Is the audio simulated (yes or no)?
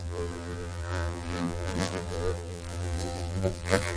yes